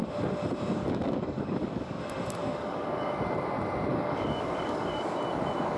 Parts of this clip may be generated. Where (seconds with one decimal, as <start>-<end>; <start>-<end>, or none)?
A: 0.8-2.0; 2.4-3.1; 3.9-5.2